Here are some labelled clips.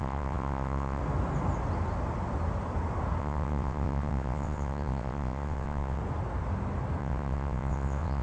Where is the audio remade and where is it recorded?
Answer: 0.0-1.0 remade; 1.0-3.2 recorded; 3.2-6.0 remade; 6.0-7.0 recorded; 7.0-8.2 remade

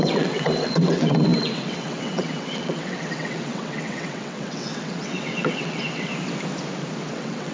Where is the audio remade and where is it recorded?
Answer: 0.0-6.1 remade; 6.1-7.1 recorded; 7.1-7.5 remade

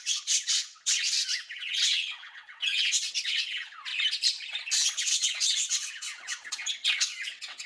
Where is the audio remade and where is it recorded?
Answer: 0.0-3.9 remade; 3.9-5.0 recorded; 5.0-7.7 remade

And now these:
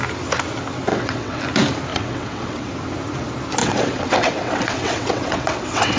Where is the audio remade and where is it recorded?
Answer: 0.0-0.9 recorded; 0.9-1.4 remade; 1.4-1.9 recorded; 1.9-2.7 remade; 2.7-3.6 recorded; 3.6-6.0 remade

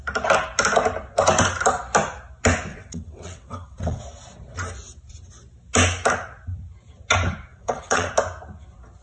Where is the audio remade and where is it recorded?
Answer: 0.0-2.7 recorded; 2.7-4.0 remade; 4.0-7.5 recorded; 7.5-8.1 remade; 8.1-9.0 recorded

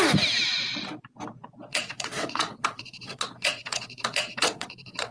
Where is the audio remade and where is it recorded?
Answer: 0.0-1.7 recorded; 1.7-5.1 remade

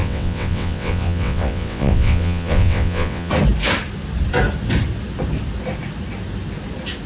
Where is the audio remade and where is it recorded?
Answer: 0.0-3.3 remade; 3.3-7.1 recorded